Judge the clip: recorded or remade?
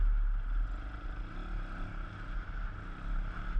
recorded